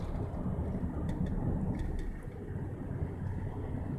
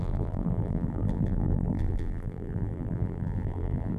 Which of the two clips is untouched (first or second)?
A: first